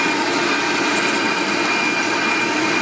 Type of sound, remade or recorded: recorded